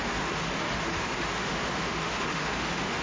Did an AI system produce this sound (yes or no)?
yes